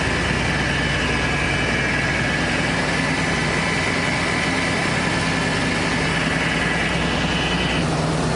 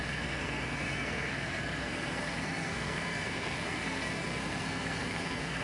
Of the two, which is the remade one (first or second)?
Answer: second